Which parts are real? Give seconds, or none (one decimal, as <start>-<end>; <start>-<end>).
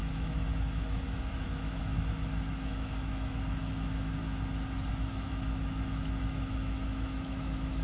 4.2-4.9